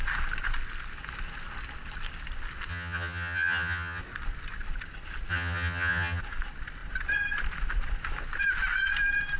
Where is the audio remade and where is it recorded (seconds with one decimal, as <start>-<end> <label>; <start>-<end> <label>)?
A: 0.0-2.7 recorded; 2.7-4.0 remade; 4.0-5.3 recorded; 5.3-6.2 remade; 6.2-9.4 recorded